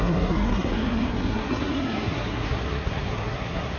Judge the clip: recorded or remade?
remade